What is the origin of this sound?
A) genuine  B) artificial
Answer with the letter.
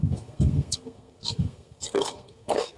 B